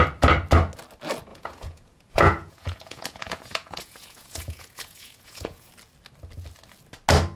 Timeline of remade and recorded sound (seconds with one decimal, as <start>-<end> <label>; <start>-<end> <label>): 0.0-1.3 recorded; 1.3-5.7 remade; 5.7-7.4 recorded

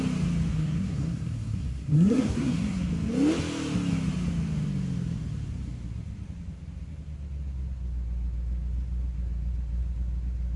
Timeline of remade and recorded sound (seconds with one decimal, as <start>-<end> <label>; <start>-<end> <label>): 0.0-0.5 recorded; 0.5-2.9 remade; 2.9-10.6 recorded